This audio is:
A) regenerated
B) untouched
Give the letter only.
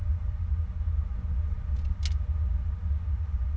B